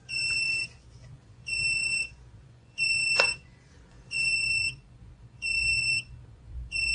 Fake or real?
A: fake